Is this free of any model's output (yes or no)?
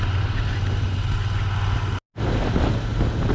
yes